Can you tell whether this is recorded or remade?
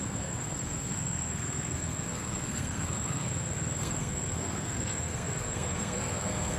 remade